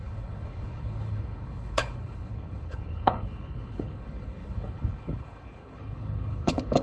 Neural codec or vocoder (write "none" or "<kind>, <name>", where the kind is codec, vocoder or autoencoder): codec, HILCodec